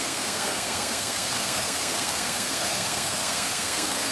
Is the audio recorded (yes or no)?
no